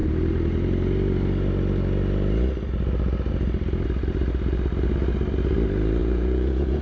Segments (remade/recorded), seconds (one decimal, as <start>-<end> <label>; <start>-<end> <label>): 0.0-6.0 recorded; 6.0-6.8 remade